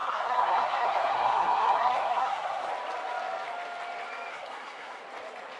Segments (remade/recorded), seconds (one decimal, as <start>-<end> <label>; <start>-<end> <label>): 0.0-2.7 remade; 2.7-4.3 recorded; 4.3-5.0 remade; 5.0-5.6 recorded